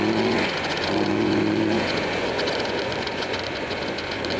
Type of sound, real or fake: fake